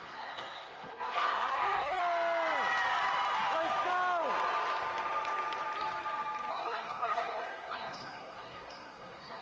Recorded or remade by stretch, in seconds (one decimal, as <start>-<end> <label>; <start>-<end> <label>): 0.0-2.0 remade; 2.0-6.5 recorded; 6.5-9.4 remade